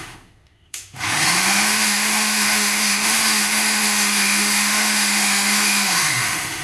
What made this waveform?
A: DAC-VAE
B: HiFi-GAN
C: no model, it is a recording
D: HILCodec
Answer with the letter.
A